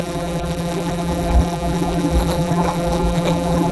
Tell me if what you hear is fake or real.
fake